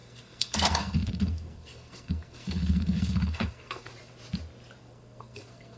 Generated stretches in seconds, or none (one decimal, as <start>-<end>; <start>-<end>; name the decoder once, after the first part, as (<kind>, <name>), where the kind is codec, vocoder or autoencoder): 0.0-3.9 (codec, SNAC); 4.8-5.8